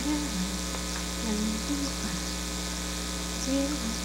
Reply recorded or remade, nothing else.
recorded